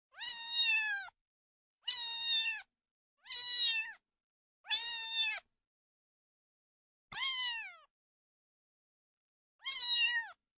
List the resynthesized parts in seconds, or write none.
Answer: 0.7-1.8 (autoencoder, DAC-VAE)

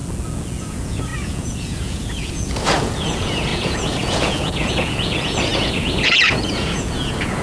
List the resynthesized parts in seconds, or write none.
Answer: 0.6-7.4 (vocoder, Vocos)

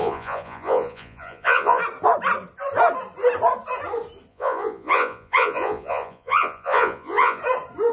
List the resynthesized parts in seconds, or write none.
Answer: 0.0-1.8 (vocoder, Vocos); 4.3-7.4

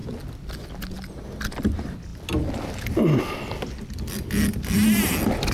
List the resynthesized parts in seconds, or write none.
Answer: none